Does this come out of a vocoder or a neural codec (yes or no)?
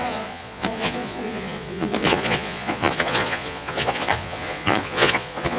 yes